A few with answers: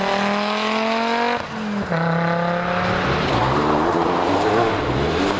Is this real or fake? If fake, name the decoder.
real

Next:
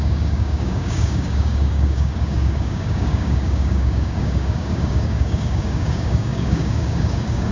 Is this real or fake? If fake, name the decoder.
fake, codec, DAC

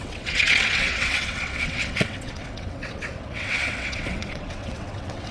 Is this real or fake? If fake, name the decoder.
fake, vocoder, WaveNeXt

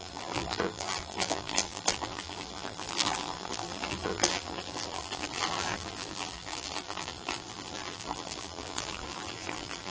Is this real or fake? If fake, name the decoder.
fake, vocoder, BigVGAN v2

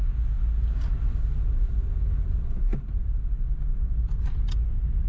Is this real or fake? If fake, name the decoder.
real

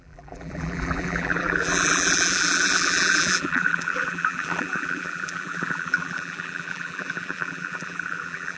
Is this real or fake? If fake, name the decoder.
fake, vocoder, BigVGAN v2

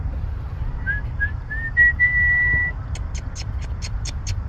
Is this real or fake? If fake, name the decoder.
real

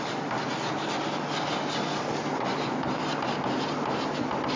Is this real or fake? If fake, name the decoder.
real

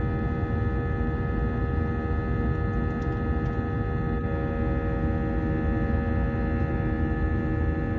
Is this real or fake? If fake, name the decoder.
real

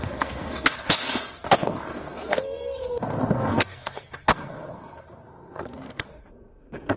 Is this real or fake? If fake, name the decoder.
fake, codec, SNAC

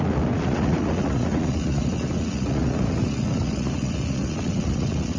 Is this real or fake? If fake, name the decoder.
fake, vocoder, Vocos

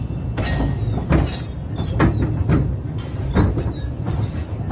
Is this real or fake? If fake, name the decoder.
real